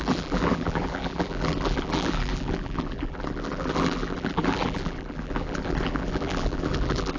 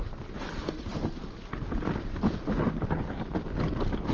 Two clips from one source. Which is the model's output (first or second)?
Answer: first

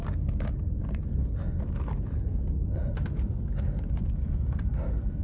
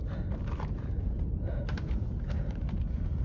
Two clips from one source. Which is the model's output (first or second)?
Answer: second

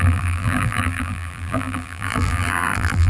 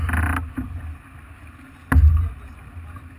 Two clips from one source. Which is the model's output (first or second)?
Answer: first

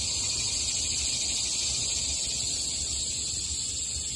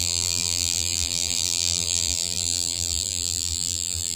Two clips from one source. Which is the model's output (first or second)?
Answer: second